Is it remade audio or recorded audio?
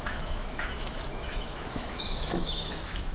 remade